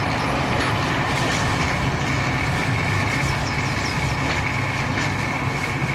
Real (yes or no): yes